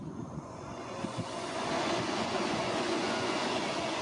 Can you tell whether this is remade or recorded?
remade